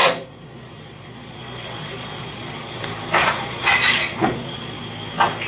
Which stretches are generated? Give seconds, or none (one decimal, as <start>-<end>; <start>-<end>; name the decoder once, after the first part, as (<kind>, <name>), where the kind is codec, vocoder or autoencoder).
0.0-2.8 (vocoder, Vocos); 3.2-4.8